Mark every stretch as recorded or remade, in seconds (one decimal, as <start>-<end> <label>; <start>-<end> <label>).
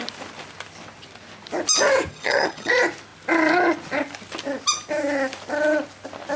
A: 0.0-2.1 recorded; 2.1-2.7 remade; 2.7-6.4 recorded